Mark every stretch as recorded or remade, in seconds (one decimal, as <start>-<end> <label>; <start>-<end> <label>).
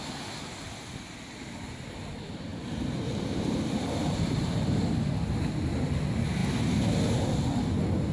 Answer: 0.0-2.5 recorded; 2.5-4.8 remade; 4.8-8.1 recorded